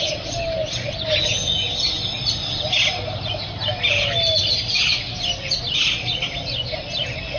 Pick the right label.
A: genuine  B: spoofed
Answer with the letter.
A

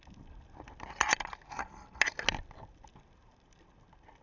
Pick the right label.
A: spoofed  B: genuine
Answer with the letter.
B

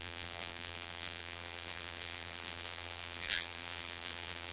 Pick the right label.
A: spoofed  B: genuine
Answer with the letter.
A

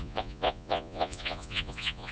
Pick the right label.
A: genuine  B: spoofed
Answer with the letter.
B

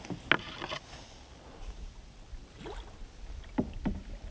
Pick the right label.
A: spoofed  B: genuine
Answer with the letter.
B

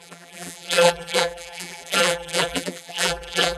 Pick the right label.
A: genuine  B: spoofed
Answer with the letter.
B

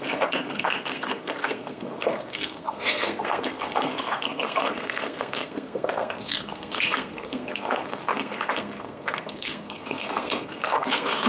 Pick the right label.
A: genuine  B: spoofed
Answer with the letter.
B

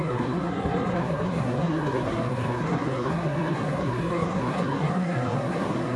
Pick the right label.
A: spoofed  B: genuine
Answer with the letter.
A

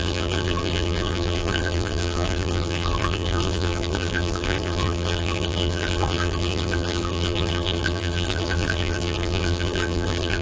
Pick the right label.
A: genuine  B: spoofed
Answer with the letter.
B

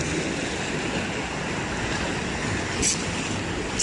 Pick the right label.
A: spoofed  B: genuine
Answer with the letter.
B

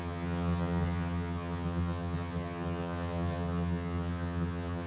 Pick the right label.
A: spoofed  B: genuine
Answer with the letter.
A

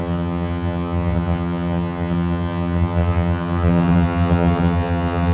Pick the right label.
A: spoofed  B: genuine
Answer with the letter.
A